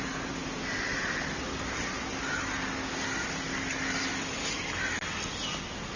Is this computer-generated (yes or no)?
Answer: no